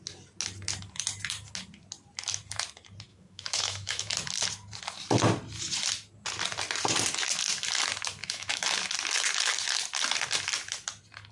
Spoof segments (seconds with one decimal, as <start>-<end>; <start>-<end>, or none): 3.1-4.1; 8.2-8.8